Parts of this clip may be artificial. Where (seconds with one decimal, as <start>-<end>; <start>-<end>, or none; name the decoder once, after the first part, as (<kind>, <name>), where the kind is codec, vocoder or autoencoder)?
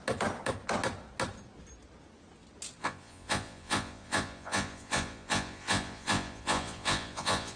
2.8-7.6 (vocoder, Vocos)